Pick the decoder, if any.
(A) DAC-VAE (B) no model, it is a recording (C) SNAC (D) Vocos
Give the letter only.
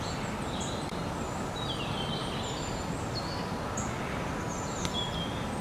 B